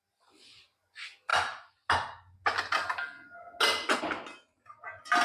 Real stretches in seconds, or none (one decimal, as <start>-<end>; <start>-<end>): 0.0-5.2